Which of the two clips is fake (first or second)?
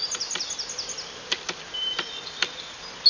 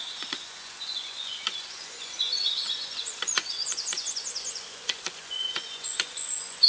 second